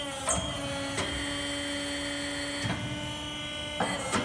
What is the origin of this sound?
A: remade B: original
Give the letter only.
B